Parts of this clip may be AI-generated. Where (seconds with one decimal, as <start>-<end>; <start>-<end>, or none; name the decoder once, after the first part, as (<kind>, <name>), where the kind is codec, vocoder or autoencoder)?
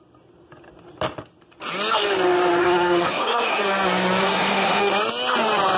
2.6-3.6 (codec, SNAC); 4.2-4.8